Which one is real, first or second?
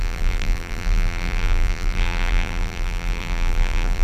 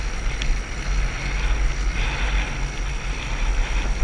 second